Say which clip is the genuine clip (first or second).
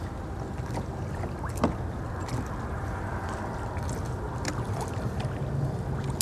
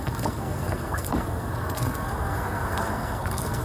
first